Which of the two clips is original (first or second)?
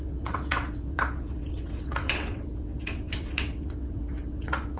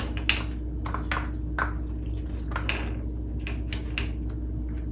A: second